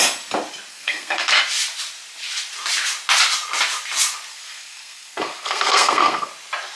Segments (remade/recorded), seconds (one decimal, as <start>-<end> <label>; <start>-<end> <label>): 0.0-0.7 recorded; 0.7-1.4 remade; 1.4-4.3 recorded; 4.3-6.3 remade; 6.3-6.8 recorded